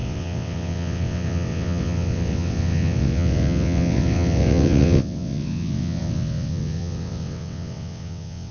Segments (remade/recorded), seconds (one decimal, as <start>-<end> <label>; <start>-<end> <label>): 0.0-8.5 remade